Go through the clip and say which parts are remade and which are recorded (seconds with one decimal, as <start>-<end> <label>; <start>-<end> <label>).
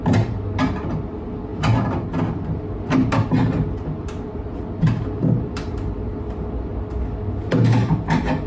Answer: 0.0-8.5 recorded